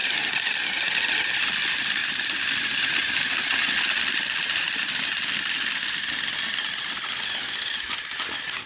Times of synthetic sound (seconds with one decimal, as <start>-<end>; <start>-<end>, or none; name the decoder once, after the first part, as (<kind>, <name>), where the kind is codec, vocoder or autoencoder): 2.0-7.1 (vocoder, BigVGAN v2)